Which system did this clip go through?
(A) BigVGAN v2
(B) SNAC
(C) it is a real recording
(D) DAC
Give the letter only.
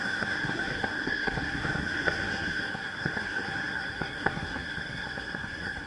B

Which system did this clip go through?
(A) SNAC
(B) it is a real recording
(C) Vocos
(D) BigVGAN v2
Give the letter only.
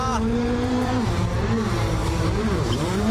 D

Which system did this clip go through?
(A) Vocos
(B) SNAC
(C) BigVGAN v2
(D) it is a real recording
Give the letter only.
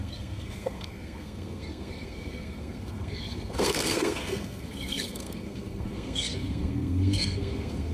B